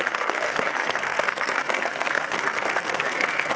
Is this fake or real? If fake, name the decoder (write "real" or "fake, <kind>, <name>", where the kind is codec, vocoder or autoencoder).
fake, codec, SNAC